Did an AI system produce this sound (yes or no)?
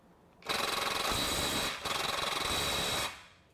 no